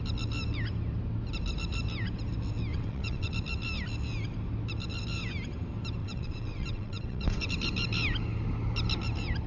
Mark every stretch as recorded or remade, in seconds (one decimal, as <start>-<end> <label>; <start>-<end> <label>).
0.0-2.7 recorded; 2.7-3.3 remade; 3.3-6.0 recorded; 6.0-7.5 remade; 7.5-9.5 recorded